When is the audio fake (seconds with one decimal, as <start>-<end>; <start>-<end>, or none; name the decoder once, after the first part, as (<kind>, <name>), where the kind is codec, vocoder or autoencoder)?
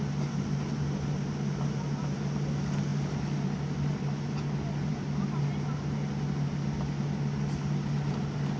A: none